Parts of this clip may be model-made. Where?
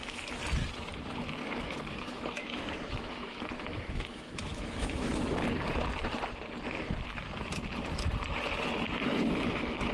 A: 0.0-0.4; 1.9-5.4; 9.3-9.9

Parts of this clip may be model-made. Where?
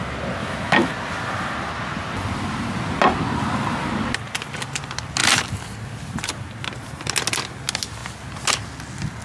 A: 0.4-0.9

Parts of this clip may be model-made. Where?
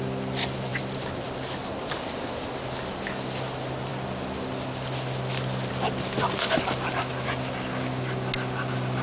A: none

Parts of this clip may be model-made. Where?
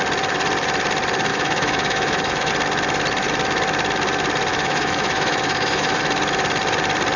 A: 1.3-2.5; 4.5-6.0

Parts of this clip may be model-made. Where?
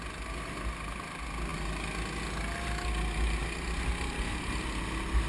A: none